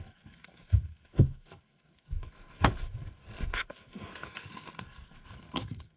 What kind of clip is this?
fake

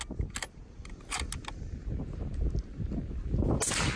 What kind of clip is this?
real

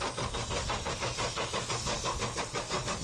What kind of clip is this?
real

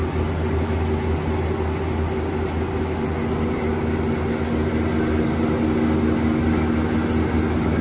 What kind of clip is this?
real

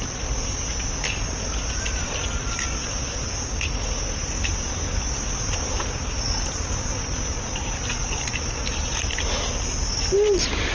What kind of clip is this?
real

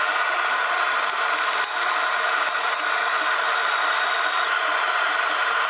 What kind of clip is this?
real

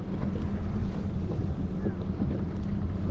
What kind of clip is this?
real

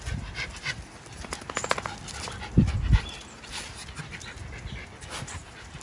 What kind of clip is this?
real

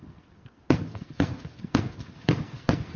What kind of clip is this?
fake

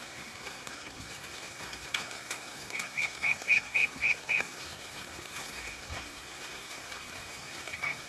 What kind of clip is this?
fake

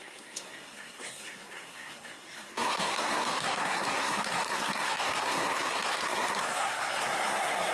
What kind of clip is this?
fake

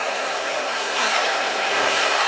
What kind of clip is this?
fake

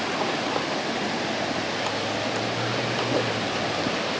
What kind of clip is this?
real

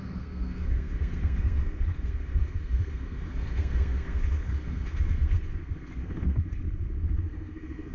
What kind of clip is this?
fake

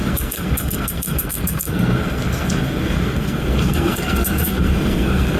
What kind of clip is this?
fake